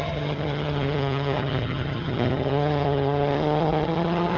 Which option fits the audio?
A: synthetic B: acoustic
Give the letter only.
A